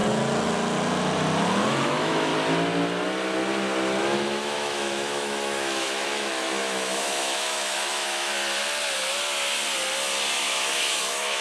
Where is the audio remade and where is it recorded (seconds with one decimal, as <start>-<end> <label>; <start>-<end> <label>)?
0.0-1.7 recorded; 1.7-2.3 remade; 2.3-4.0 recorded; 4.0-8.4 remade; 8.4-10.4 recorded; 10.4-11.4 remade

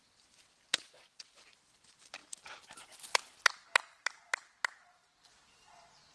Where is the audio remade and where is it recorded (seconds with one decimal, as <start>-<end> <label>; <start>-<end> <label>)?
0.0-6.1 recorded

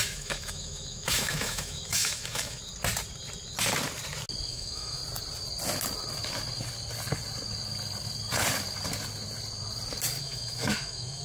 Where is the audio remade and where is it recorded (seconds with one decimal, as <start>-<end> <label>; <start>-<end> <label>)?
0.0-2.6 remade; 2.6-4.5 recorded; 4.5-5.0 remade; 5.0-10.2 recorded; 10.2-11.2 remade

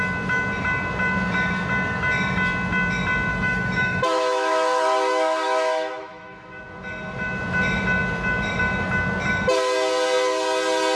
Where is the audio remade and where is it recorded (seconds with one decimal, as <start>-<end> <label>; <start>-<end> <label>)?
0.0-3.3 recorded; 3.3-6.6 remade; 6.6-11.0 recorded

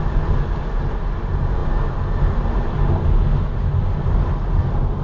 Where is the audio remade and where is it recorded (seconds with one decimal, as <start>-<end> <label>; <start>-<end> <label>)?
0.0-5.0 recorded

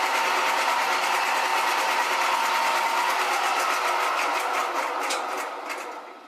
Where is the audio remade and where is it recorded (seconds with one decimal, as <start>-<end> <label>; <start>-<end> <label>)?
0.0-6.3 recorded

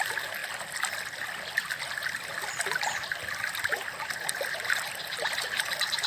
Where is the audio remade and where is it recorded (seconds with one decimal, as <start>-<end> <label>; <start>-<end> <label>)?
0.0-6.1 recorded

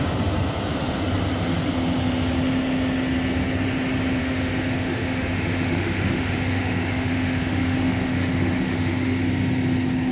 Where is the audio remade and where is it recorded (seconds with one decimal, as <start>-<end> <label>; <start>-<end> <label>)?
0.0-4.2 recorded; 4.2-9.2 remade; 9.2-10.1 recorded